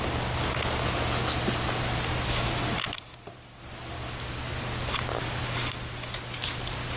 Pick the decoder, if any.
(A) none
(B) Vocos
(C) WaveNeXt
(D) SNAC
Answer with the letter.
A